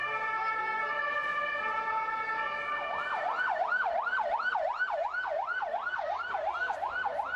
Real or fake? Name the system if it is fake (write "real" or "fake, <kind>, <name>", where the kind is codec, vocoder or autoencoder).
real